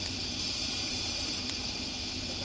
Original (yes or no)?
no